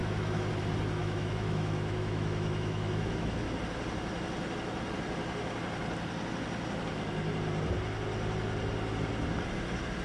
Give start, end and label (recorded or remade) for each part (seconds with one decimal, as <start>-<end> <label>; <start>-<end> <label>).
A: 0.0-0.5 remade; 0.5-1.0 recorded; 1.0-3.6 remade; 3.6-10.0 recorded